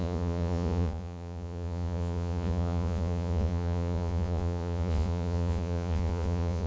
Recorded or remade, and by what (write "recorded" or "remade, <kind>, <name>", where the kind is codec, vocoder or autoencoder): remade, vocoder, Vocos